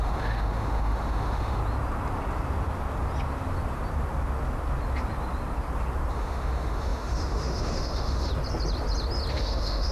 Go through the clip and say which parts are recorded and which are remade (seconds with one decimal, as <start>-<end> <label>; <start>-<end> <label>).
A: 0.0-1.6 remade; 1.6-6.1 recorded; 6.1-8.3 remade; 8.3-9.3 recorded; 9.3-9.9 remade